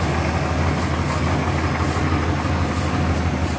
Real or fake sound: real